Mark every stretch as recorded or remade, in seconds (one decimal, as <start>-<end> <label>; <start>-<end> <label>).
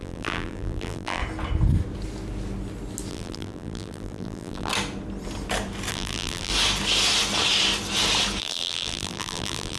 0.0-1.2 remade; 1.2-3.1 recorded; 3.1-4.7 remade; 4.7-5.9 recorded; 5.9-6.5 remade; 6.5-8.4 recorded; 8.4-9.8 remade